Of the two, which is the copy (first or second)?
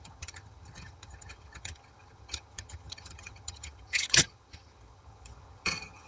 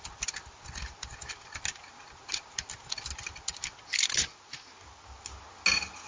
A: first